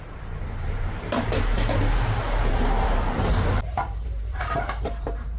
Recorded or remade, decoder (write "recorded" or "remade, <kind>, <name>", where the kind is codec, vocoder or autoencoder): remade, vocoder, BigVGAN v2